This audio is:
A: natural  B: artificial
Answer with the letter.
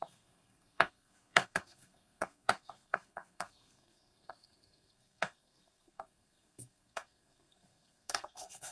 B